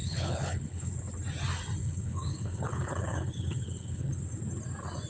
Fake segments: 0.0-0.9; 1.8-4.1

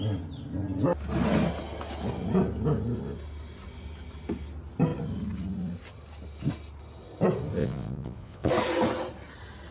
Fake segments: 7.6-8.5

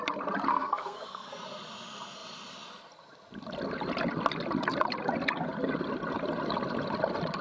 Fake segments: 0.5-1.3

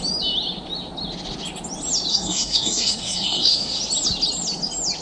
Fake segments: 2.1-3.8

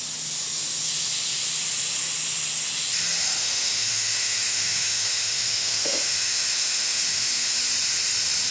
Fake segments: 3.4-7.6

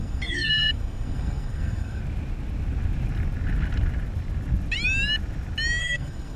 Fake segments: 0.0-2.0; 5.8-6.4